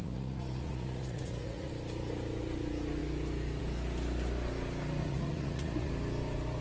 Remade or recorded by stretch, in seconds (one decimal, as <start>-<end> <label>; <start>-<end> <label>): 0.0-1.7 remade; 1.7-5.0 recorded; 5.0-5.9 remade; 5.9-6.6 recorded